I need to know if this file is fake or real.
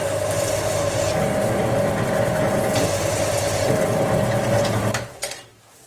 real